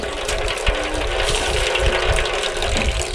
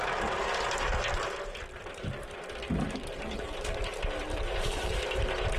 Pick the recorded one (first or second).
first